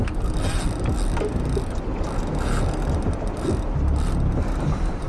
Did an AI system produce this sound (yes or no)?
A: no